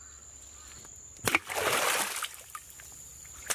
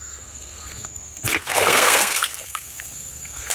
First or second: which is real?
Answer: first